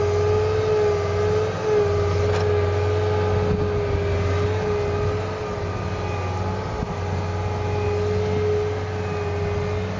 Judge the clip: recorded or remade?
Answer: recorded